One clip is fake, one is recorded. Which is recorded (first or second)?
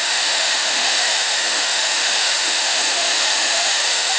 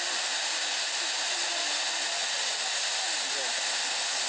second